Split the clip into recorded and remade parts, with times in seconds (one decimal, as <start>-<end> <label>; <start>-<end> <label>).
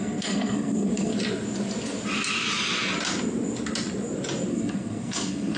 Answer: 0.0-1.1 remade; 1.1-4.5 recorded; 4.5-5.6 remade